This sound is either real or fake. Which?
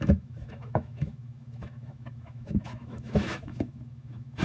fake